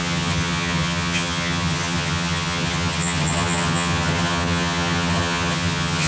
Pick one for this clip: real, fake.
fake